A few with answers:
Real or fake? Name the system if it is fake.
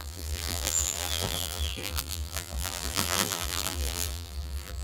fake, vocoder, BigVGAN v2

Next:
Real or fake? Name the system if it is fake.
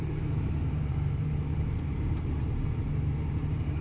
fake, vocoder, BigVGAN v2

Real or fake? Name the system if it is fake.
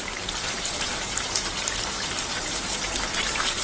fake, vocoder, BigVGAN v2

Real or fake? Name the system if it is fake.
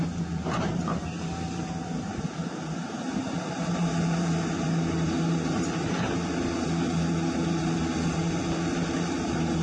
fake, vocoder, BigVGAN v2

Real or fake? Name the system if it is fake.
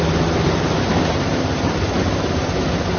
real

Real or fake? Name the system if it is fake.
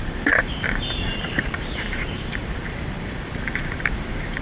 fake, vocoder, BigVGAN v2